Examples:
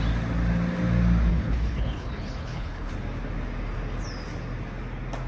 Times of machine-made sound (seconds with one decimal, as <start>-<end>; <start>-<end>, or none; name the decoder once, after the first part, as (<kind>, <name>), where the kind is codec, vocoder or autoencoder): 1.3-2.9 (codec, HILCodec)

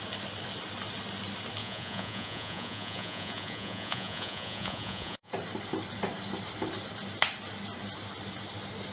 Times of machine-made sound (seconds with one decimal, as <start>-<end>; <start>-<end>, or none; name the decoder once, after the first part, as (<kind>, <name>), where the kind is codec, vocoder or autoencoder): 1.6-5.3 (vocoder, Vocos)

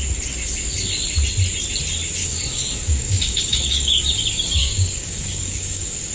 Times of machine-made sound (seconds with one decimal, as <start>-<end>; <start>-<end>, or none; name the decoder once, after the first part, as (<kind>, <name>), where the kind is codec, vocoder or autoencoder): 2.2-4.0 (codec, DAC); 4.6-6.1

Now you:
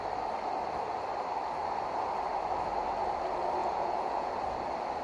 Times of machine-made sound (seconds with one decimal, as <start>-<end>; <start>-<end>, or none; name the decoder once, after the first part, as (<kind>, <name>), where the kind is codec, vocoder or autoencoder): 3.6-4.3 (vocoder, Vocos)

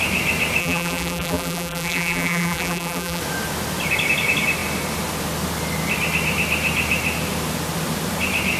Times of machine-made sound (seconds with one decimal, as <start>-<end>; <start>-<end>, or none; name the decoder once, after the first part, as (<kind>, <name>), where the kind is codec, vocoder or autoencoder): 0.6-3.2 (vocoder, BigVGAN v2)